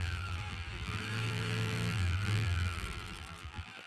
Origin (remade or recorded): remade